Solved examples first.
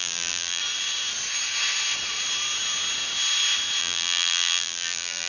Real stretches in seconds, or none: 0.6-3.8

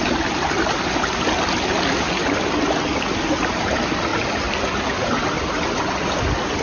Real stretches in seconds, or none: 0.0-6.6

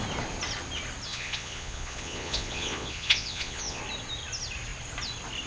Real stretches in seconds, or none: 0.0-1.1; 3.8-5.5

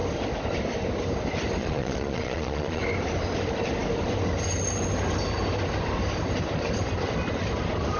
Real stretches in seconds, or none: 0.0-1.6; 2.8-8.0

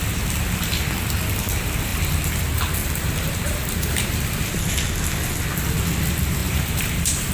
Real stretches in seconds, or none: 0.0-2.8; 4.7-6.4

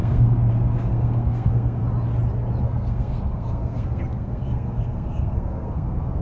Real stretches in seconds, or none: 1.8-2.6